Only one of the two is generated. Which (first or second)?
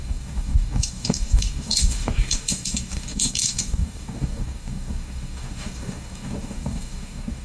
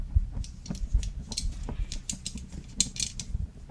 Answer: first